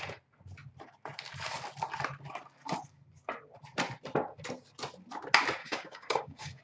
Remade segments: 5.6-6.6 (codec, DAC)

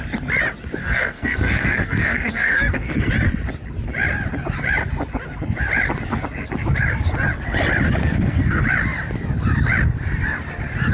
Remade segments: 0.8-3.1 (codec, SNAC); 8.0-8.6

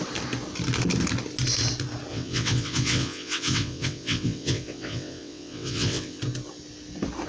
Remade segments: 2.1-6.2 (vocoder, WaveNeXt)

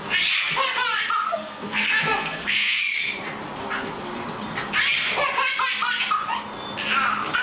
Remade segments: 1.2-2.8 (codec, SNAC)

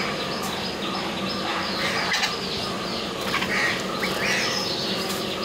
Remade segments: none

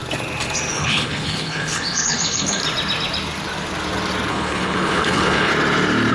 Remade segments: 0.7-2.6 (codec, HILCodec); 4.3-5.5